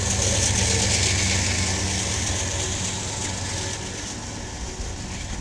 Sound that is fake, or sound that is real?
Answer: real